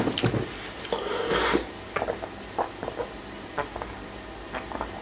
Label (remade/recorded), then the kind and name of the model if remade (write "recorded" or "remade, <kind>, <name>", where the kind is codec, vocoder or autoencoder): recorded